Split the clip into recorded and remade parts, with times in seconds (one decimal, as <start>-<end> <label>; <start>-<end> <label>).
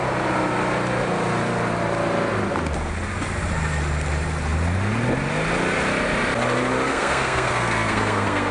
0.0-6.9 recorded; 6.9-8.5 remade